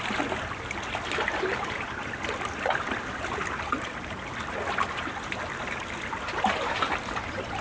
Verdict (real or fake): real